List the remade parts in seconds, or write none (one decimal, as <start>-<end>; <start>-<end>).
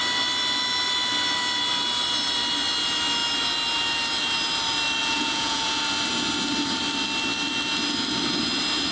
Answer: 5.0-5.8